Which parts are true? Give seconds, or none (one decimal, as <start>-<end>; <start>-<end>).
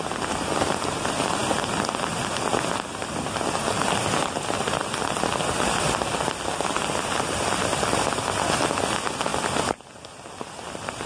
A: 0.0-11.1